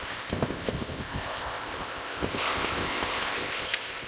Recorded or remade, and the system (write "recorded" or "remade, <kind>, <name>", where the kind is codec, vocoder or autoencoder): remade, codec, ZipCodec